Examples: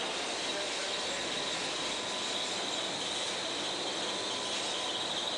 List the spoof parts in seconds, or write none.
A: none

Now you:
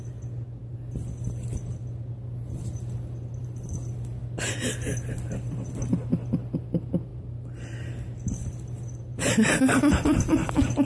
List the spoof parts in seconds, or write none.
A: none